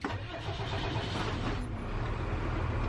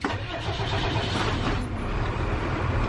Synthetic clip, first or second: second